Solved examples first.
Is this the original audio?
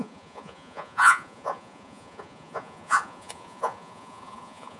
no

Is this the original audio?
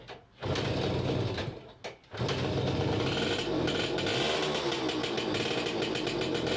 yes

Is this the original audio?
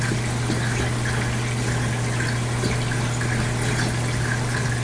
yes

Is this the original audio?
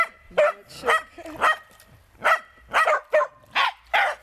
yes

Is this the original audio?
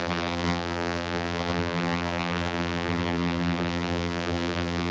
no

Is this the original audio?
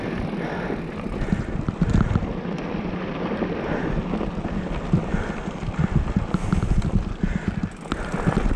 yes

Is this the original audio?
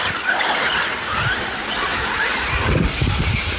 yes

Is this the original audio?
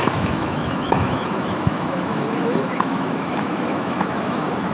no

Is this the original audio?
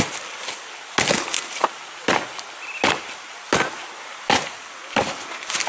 yes